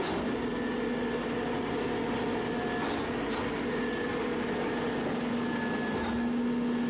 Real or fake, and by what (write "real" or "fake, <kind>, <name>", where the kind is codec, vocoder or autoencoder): real